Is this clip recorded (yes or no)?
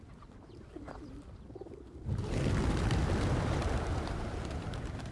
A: no